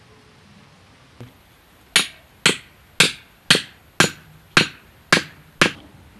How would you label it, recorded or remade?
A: recorded